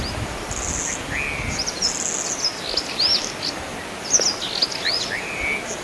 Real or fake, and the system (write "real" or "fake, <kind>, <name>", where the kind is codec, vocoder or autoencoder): real